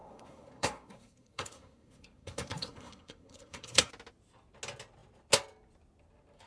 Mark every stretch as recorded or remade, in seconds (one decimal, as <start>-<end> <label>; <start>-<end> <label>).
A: 0.0-3.9 remade; 3.9-6.5 recorded